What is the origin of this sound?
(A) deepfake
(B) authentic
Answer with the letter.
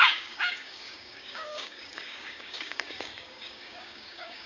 A